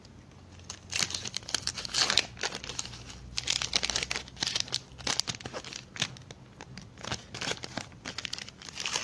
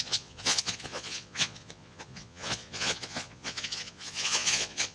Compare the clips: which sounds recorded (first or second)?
first